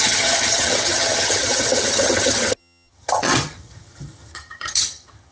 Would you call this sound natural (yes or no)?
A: no